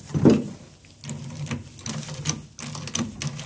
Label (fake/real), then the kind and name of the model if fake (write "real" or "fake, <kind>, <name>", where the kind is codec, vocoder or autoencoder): real